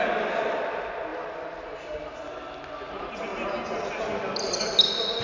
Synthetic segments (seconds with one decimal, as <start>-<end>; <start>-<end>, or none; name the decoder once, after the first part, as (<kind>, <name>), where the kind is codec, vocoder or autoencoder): none

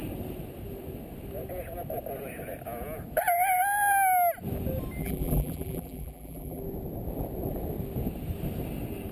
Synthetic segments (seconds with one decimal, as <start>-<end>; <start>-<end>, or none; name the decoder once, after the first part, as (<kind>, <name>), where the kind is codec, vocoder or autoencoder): 5.0-6.6 (vocoder, BigVGAN v2)

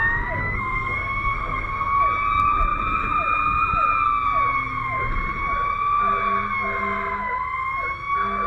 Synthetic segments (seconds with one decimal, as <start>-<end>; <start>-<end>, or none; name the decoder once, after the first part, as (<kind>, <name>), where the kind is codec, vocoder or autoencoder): 0.4-2.0 (codec, SNAC)

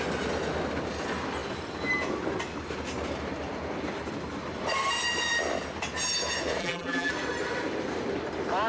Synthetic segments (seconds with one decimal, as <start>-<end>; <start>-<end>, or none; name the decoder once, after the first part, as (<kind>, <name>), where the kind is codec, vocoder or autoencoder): 6.6-7.1 (vocoder, BigVGAN v2)